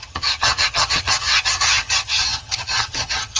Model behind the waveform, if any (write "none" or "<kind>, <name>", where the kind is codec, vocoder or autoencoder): vocoder, HiFi-GAN